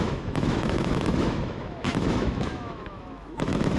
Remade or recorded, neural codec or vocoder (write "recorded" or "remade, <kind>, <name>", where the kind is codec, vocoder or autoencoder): remade, autoencoder, DAC-VAE